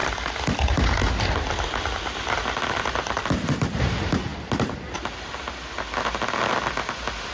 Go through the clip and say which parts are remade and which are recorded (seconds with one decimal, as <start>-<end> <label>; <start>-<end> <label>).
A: 0.0-7.3 recorded